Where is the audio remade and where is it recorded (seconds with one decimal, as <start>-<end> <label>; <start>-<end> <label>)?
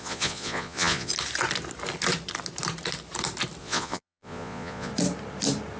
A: 0.0-1.1 remade; 1.1-3.6 recorded; 3.6-4.9 remade; 4.9-5.8 recorded